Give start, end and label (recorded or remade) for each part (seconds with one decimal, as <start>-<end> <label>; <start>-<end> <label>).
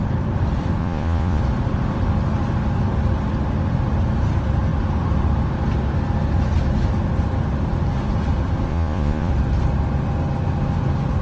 0.0-0.8 recorded; 0.8-1.4 remade; 1.4-8.7 recorded; 8.7-9.3 remade; 9.3-11.2 recorded